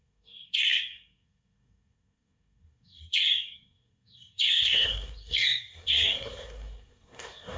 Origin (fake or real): fake